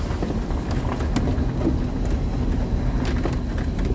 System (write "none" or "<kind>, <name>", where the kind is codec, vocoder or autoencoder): none